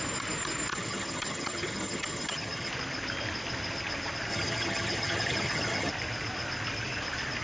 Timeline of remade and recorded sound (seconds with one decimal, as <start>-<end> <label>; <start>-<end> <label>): 0.0-0.7 recorded; 0.7-2.7 remade; 2.7-4.3 recorded; 4.3-5.9 remade; 5.9-7.4 recorded